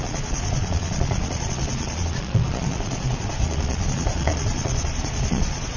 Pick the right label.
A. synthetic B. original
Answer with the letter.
A